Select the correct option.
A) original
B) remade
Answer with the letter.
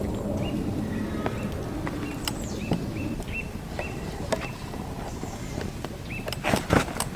A